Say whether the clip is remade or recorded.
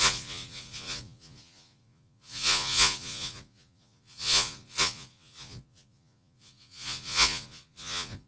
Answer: remade